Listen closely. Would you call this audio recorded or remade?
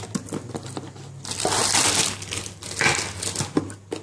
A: recorded